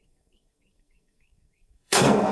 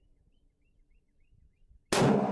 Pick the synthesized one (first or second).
first